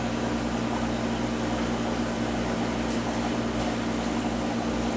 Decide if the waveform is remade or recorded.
recorded